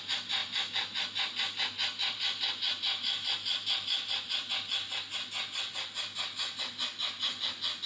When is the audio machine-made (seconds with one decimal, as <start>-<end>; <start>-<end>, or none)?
none